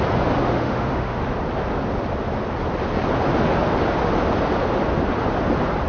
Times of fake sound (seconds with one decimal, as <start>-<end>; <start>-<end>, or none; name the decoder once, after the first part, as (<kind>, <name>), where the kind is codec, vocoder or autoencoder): 0.4-1.2 (autoencoder, DAC-VAE)

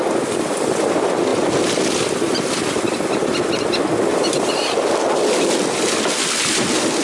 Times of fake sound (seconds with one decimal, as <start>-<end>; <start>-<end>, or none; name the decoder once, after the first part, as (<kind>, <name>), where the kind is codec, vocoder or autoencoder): 4.1-5.2 (vocoder, BigVGAN v2)

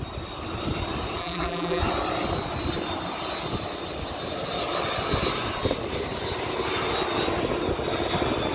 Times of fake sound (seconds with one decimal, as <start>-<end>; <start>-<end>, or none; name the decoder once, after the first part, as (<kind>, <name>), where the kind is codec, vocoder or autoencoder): 1.2-1.8 (vocoder, BigVGAN v2)

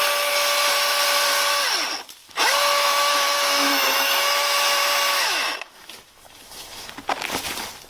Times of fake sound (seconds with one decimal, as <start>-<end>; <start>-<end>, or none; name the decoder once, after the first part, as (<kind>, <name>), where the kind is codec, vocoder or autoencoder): 2.2-6.9 (autoencoder, DAC-VAE)